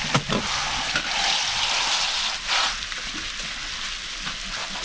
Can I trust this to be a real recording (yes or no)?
yes